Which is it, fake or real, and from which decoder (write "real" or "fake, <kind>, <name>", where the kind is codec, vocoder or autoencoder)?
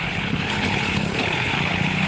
fake, codec, HILCodec